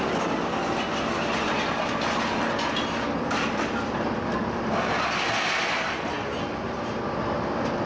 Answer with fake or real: real